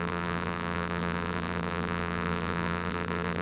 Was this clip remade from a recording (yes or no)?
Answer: yes